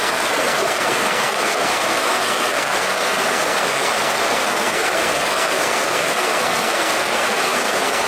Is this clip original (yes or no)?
no